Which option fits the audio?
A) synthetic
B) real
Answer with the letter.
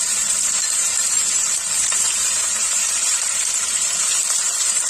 A